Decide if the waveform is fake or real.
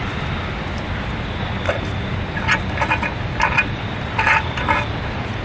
real